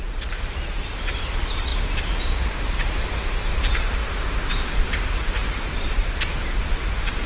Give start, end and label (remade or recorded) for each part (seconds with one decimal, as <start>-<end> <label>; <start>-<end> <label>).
0.0-1.7 remade; 1.7-2.5 recorded; 2.5-4.0 remade; 4.0-4.5 recorded; 4.5-7.3 remade